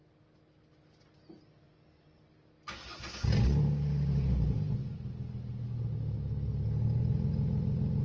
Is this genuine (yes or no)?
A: yes